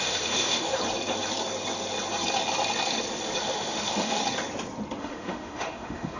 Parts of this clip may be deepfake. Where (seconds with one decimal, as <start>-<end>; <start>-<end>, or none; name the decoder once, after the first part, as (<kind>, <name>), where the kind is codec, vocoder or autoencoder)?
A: 0.0-0.8 (autoencoder, DAC-VAE); 3.4-4.2; 5.0-6.2